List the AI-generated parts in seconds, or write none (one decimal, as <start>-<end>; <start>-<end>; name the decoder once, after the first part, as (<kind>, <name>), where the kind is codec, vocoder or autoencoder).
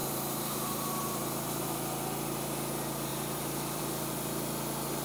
0.0-1.7 (vocoder, BigVGAN v2); 3.1-3.8